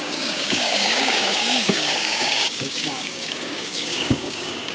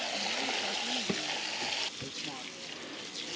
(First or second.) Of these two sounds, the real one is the second